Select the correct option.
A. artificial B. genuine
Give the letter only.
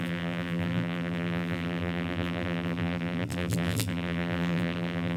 A